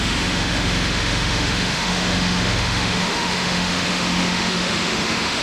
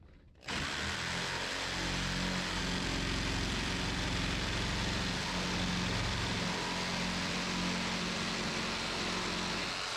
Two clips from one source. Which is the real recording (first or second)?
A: second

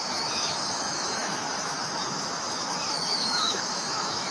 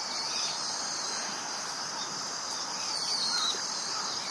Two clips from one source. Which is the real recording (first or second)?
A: second